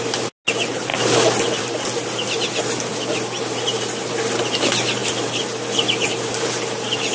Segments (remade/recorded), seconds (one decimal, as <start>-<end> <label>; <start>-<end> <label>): 0.0-7.1 recorded